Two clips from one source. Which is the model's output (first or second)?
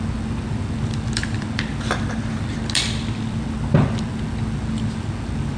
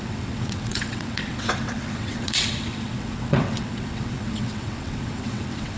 second